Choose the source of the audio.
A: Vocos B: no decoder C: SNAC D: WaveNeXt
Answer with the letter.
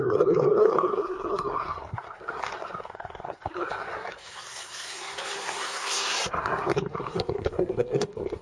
C